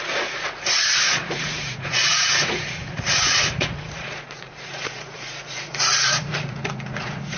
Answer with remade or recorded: remade